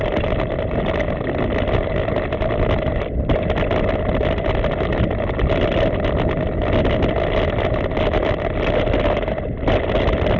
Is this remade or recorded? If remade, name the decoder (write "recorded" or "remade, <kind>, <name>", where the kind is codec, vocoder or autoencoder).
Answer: recorded